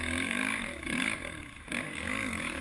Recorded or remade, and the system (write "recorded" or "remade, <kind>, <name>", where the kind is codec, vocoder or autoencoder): remade, codec, DAC